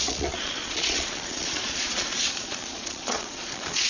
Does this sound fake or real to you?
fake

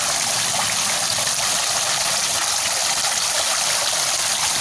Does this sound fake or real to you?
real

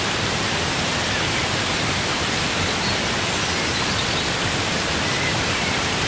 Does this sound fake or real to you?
real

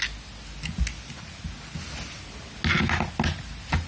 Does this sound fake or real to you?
real